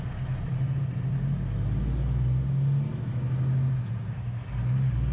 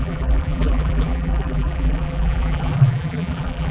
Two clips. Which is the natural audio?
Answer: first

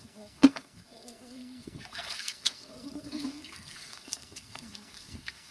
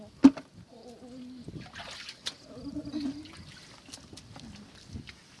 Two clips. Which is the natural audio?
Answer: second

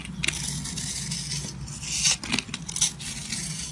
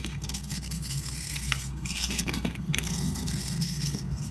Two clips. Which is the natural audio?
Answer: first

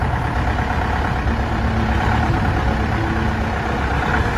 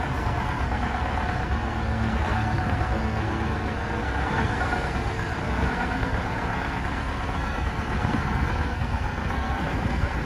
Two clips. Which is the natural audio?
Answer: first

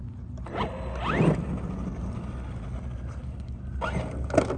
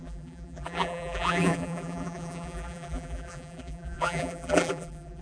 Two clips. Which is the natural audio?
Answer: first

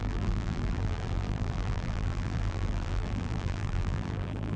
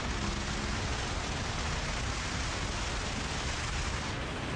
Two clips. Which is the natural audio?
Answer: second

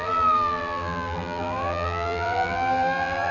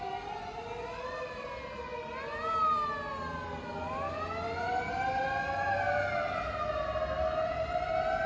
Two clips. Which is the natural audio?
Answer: second